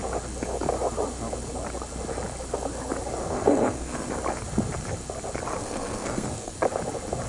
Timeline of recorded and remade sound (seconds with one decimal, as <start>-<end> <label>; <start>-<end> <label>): 0.0-3.2 recorded; 3.2-4.1 remade; 4.1-5.6 recorded; 5.6-6.5 remade; 6.5-7.3 recorded